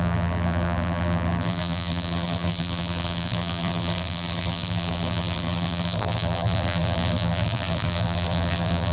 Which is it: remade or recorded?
remade